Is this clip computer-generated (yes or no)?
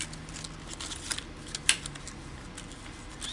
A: no